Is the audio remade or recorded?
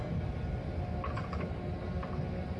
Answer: recorded